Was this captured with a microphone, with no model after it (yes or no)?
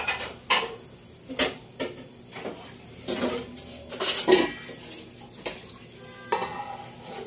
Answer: yes